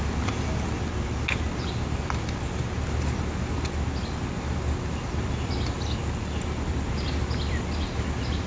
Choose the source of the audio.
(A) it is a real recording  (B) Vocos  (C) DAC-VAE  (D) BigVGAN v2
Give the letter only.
A